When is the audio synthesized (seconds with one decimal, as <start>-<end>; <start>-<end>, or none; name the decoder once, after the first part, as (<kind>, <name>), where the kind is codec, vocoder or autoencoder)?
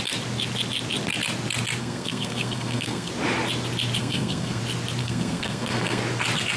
1.8-3.1 (codec, SNAC); 4.0-4.6; 5.0-6.0